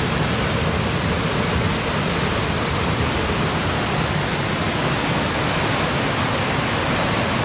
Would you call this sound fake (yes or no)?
no